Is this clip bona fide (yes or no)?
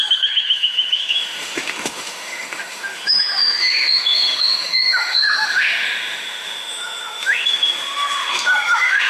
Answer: no